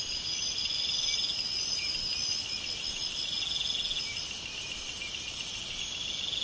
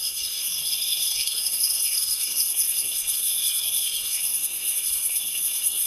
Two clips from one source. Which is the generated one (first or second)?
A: second